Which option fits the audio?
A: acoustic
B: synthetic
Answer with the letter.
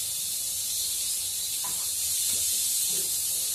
A